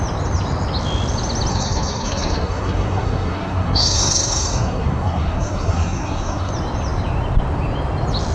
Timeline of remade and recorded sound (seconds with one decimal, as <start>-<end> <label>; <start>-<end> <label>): 0.0-1.5 recorded; 1.5-6.5 remade; 6.5-8.3 recorded

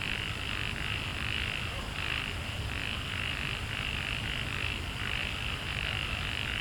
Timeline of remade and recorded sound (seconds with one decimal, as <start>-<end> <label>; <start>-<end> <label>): 0.0-6.6 recorded

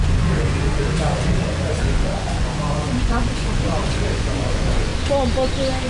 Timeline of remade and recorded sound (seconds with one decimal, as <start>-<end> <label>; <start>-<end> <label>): 0.0-4.9 remade; 4.9-5.9 recorded

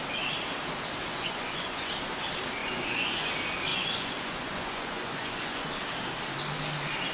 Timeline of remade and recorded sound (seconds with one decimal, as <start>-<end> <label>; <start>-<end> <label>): 0.0-1.1 recorded; 1.1-1.9 remade; 1.9-2.6 recorded; 2.6-3.3 remade; 3.3-3.7 recorded; 3.7-5.7 remade; 5.7-7.1 recorded

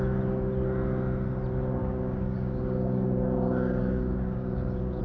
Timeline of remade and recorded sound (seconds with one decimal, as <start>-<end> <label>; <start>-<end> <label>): 0.0-1.8 recorded; 1.8-5.0 remade

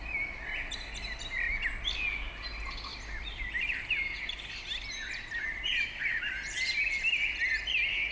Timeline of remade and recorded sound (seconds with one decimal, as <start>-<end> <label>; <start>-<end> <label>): 0.0-8.1 recorded

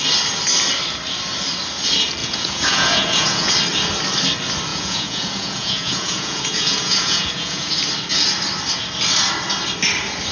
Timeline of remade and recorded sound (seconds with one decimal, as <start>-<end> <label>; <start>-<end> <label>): 0.0-2.2 recorded; 2.2-3.5 remade; 3.5-4.7 recorded; 4.7-7.7 remade; 7.7-10.3 recorded

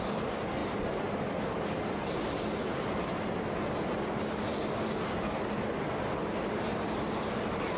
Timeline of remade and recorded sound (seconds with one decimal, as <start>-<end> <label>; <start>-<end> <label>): 0.0-7.8 recorded